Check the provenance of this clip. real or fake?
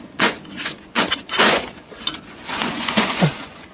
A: fake